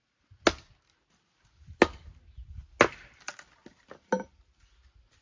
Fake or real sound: real